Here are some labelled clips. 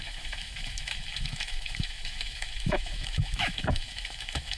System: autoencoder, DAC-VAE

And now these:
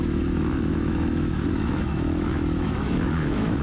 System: autoencoder, DAC-VAE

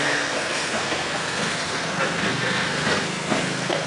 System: codec, SNAC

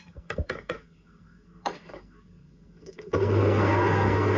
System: codec, SNAC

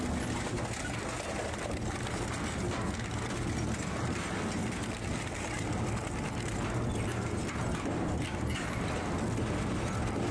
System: none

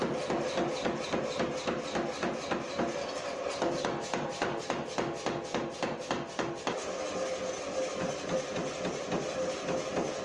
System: none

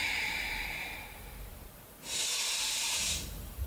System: vocoder, BigVGAN v2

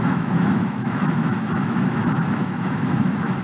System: autoencoder, DAC-VAE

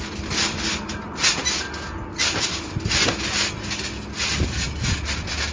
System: none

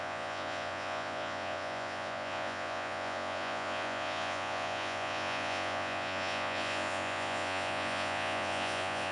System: vocoder, Vocos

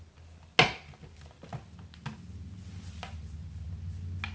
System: none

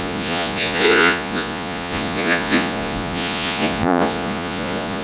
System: vocoder, Vocos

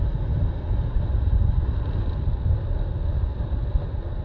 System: none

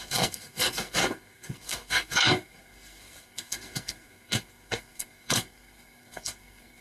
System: codec, SNAC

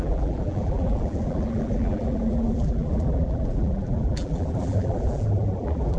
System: vocoder, BigVGAN v2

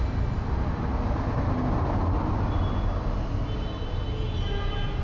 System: none